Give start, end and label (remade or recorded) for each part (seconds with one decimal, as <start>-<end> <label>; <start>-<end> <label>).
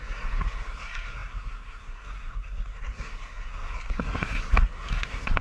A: 0.0-5.4 remade